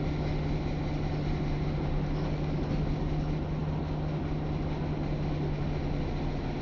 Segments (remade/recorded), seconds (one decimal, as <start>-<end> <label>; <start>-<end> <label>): 0.0-6.6 recorded